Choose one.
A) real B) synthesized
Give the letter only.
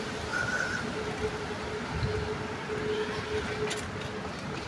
A